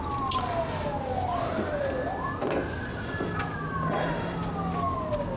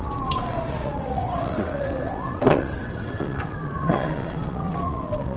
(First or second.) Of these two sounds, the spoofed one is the second